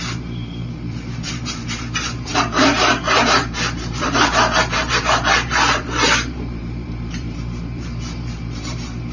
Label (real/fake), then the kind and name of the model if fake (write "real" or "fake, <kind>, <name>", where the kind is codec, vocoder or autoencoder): fake, vocoder, BigVGAN v2